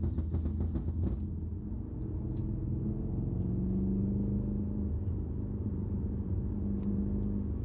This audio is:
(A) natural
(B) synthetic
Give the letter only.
A